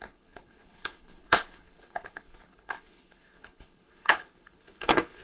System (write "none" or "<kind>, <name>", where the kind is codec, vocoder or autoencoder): codec, HILCodec